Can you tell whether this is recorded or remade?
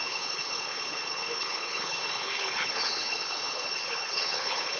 remade